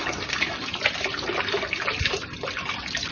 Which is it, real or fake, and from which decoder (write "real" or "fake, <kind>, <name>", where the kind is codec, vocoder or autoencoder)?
real